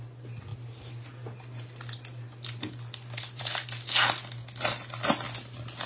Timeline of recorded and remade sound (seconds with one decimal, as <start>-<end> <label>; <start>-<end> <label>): 0.0-5.9 recorded